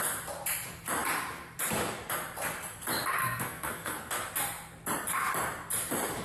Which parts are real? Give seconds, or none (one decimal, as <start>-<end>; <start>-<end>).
0.0-3.2; 4.1-6.2